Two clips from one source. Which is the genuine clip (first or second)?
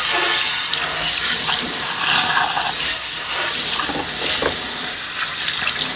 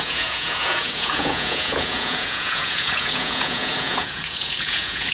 first